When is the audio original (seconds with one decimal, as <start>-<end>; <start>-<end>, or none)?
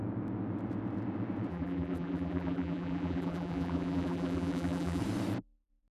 0.0-1.5; 5.0-5.9